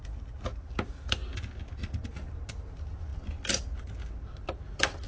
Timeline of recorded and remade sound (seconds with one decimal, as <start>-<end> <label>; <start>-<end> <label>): 0.0-5.1 recorded